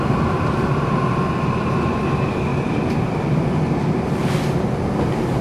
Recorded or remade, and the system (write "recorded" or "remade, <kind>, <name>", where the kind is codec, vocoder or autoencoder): recorded